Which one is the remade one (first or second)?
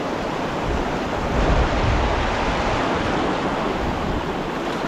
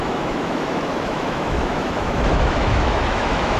second